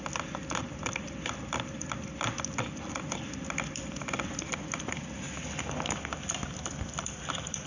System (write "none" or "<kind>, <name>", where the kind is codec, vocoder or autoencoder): none